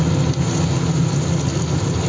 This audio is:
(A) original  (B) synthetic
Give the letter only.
A